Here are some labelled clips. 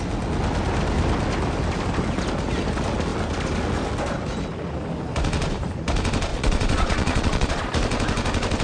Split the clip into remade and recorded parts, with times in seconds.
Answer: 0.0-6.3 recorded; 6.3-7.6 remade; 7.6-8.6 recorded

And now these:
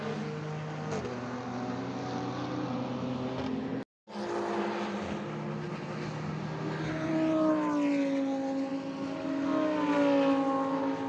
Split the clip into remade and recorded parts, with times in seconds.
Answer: 0.0-11.1 recorded

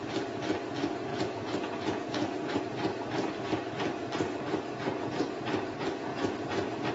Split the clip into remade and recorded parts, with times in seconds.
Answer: 0.0-1.1 recorded; 1.1-2.6 remade; 2.6-6.9 recorded

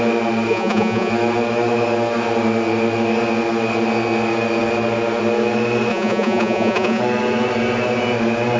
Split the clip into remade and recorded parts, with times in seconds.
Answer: 0.0-0.5 recorded; 0.5-1.1 remade; 1.1-5.9 recorded; 5.9-7.0 remade; 7.0-8.6 recorded

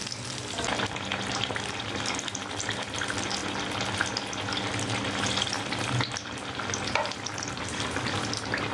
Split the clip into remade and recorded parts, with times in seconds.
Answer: 0.0-8.7 recorded

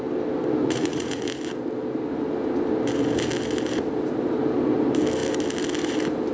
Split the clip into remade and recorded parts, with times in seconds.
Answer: 0.0-0.6 recorded; 0.6-1.3 remade; 1.3-6.3 recorded

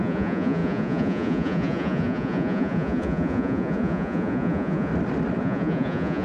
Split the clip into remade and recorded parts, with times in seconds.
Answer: 0.0-4.9 remade; 4.9-5.4 recorded; 5.4-6.2 remade